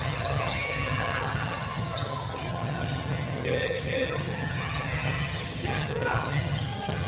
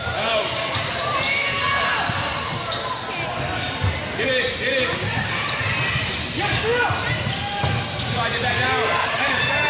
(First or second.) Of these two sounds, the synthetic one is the first